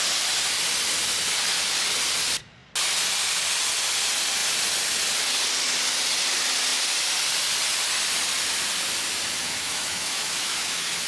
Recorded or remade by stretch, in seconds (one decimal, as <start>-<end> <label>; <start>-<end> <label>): 0.0-9.4 recorded; 9.4-11.1 remade